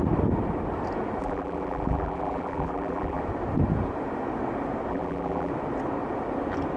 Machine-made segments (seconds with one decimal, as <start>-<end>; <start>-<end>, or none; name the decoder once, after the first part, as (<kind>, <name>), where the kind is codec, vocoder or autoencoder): 1.2-3.2 (vocoder, BigVGAN v2); 4.9-5.5